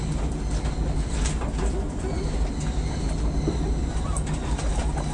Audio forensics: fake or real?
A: real